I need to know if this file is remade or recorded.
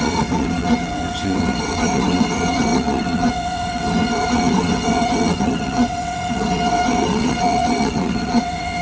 remade